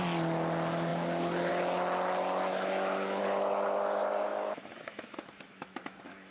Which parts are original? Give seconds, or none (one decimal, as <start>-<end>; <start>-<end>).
0.0-2.5; 3.2-4.3